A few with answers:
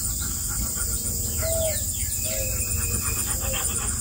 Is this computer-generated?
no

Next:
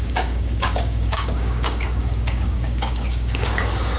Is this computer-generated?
yes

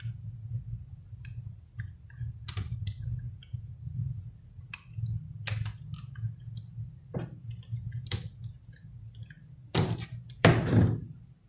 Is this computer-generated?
yes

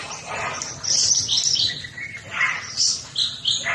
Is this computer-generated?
no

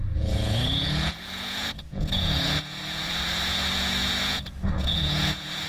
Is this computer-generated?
yes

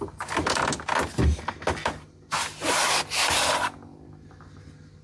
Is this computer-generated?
no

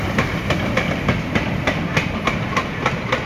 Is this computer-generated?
no